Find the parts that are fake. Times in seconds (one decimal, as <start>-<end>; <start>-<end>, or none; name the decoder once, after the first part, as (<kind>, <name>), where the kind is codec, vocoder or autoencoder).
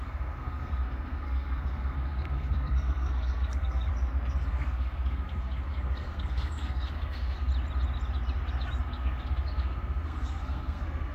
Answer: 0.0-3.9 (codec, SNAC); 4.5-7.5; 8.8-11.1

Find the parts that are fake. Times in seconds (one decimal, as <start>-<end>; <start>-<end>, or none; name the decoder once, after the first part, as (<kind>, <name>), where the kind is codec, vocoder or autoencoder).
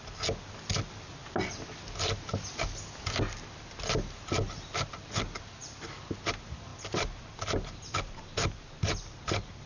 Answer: none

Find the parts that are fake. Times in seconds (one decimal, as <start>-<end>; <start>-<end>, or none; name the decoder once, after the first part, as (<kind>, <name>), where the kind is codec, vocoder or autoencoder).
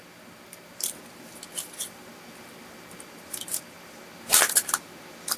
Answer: none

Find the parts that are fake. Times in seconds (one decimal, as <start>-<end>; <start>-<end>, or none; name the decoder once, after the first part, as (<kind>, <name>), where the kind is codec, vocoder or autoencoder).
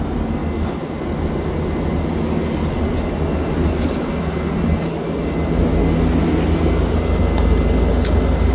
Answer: none